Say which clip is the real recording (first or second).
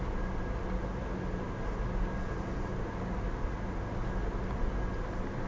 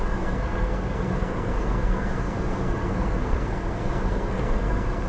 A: first